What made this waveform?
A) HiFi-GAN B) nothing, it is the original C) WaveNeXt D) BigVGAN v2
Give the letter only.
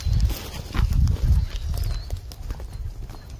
B